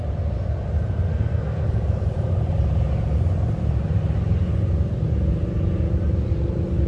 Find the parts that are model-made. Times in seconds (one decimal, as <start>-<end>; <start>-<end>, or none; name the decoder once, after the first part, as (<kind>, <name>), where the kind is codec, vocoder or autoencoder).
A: 1.1-1.7 (codec, SNAC)